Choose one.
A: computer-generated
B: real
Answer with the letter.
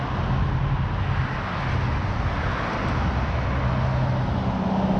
B